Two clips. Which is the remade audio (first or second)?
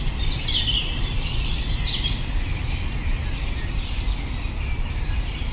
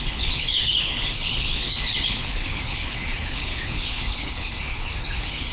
second